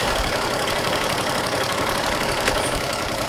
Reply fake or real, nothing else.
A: fake